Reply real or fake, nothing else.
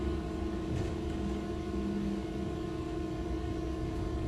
fake